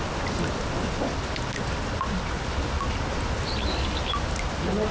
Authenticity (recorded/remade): recorded